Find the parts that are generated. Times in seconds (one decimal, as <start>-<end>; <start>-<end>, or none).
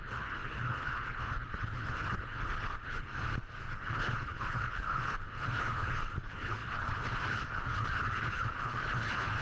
0.0-3.1; 3.7-9.4